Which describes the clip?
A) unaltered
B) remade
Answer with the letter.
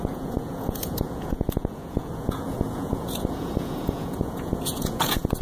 B